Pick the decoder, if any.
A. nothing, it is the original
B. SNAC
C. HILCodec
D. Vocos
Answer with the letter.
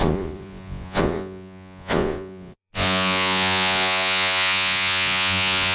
D